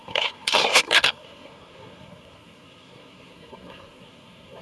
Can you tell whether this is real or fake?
fake